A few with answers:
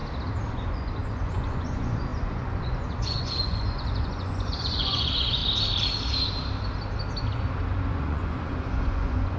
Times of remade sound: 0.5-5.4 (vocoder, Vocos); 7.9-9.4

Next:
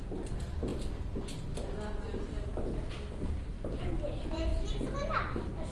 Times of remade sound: none

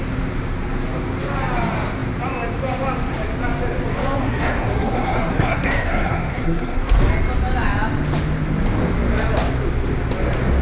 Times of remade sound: 4.2-7.0 (codec, SNAC)

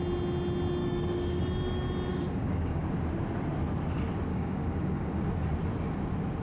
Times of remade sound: 0.8-1.4 (codec, DAC); 2.1-2.8; 4.3-5.2